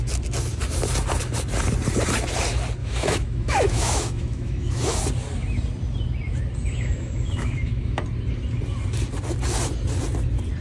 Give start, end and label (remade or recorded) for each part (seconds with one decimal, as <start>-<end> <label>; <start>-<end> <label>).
0.0-2.8 recorded; 2.8-5.0 remade; 5.0-6.6 recorded; 6.6-8.0 remade; 8.0-10.6 recorded